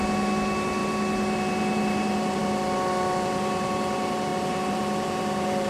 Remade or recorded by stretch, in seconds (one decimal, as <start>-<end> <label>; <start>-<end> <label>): 0.0-5.7 remade